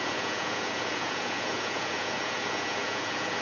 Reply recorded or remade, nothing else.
remade